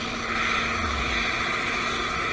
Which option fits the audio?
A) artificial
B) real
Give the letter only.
B